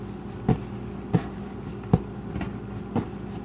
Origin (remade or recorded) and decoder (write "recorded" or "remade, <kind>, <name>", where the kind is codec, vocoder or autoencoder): recorded